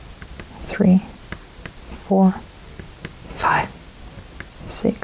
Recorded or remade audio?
recorded